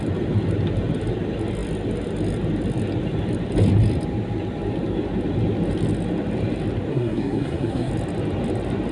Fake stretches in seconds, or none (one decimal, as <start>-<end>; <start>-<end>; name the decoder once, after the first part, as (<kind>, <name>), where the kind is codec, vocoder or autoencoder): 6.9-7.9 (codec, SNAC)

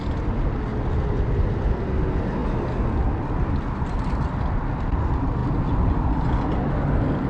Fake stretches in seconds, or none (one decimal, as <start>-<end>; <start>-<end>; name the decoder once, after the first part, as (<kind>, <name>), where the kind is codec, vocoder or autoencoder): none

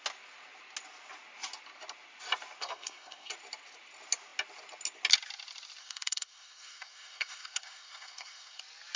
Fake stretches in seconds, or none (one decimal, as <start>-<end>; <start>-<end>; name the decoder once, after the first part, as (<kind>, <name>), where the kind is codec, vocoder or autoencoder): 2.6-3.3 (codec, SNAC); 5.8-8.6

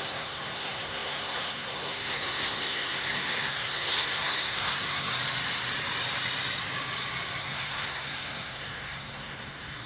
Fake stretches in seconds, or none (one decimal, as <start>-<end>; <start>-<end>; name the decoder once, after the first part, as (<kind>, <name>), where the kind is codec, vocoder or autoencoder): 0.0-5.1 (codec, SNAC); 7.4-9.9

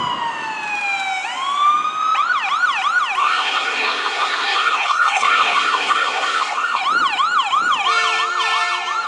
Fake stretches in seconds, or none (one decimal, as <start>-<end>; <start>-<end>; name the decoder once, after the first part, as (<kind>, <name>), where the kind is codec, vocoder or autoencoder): 3.2-6.8 (codec, SNAC)

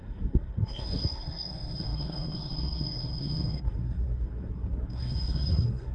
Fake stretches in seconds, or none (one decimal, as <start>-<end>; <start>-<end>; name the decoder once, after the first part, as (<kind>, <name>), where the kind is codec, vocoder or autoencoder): 0.0-5.9 (codec, SNAC)

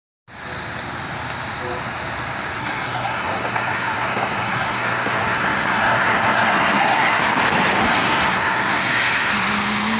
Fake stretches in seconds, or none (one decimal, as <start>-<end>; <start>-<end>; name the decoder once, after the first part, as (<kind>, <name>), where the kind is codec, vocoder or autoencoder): 2.6-7.2 (codec, SNAC); 7.8-9.3